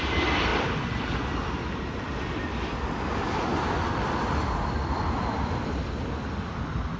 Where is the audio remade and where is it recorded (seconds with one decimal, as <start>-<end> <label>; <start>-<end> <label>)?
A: 0.0-7.0 recorded